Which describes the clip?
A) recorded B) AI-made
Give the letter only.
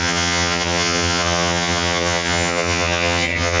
B